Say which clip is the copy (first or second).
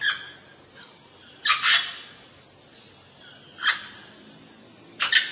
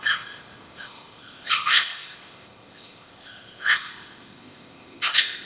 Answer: second